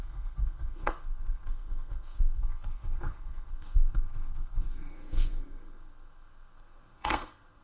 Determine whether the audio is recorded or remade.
remade